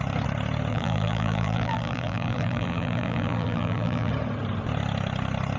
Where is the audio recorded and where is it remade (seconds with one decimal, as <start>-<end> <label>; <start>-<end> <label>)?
0.0-0.7 recorded; 0.7-4.1 remade; 4.1-5.6 recorded